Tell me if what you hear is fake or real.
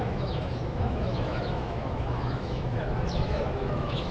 fake